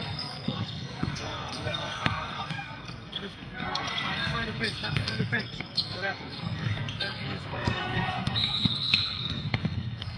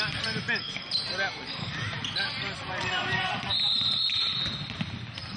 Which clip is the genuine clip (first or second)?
second